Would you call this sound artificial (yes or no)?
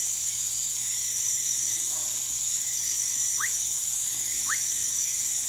yes